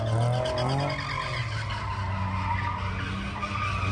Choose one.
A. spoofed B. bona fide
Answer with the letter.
B